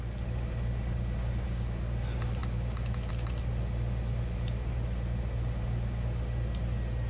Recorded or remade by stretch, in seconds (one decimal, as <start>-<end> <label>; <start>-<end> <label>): 0.0-7.1 recorded